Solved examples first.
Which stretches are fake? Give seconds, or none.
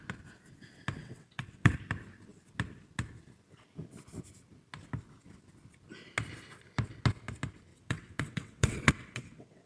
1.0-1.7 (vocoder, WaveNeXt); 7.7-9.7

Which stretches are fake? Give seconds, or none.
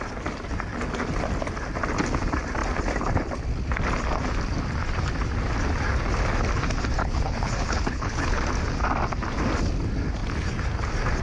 7.0-8.4 (codec, HILCodec)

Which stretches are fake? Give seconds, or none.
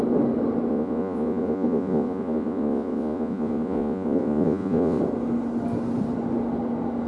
0.7-5.0 (vocoder, Vocos)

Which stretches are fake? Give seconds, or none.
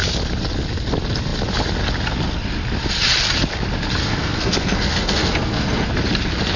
4.0-5.9 (codec, SNAC)